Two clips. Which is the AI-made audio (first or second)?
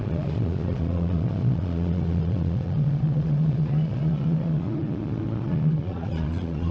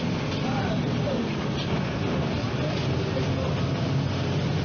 first